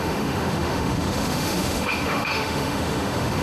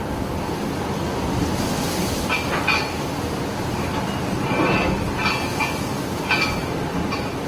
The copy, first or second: first